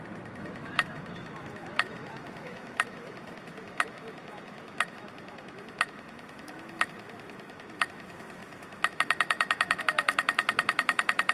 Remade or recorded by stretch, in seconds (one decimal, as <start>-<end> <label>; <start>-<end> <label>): 0.0-11.3 remade